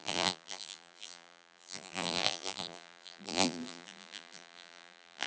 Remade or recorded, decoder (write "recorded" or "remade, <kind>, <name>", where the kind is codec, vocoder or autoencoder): remade, vocoder, BigVGAN v2